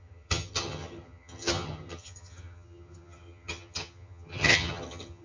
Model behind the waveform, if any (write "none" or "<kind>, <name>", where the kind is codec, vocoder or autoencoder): vocoder, HiFi-GAN